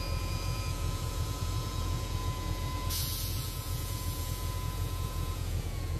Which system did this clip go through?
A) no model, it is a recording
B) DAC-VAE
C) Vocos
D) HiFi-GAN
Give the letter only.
C